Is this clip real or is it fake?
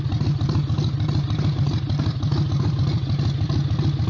real